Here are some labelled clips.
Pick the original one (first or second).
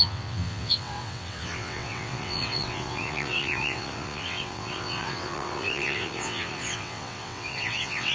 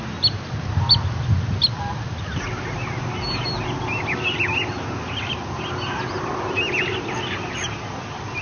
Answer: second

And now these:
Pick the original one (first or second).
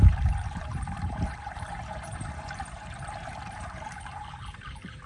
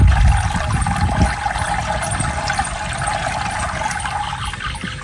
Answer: second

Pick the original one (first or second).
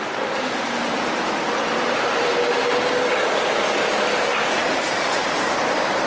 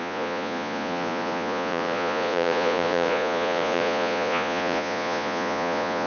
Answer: first